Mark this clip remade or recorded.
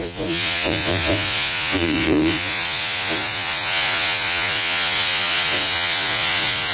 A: remade